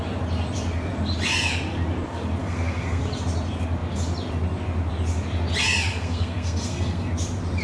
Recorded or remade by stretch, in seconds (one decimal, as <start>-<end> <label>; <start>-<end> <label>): 0.0-2.4 recorded; 2.4-3.0 remade; 3.0-5.9 recorded; 5.9-7.1 remade; 7.1-7.6 recorded